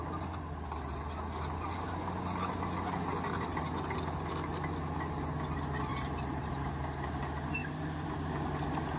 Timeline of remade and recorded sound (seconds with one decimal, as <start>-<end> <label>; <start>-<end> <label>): 0.0-5.9 recorded; 5.9-6.7 remade; 6.7-7.6 recorded; 7.6-8.3 remade; 8.3-9.0 recorded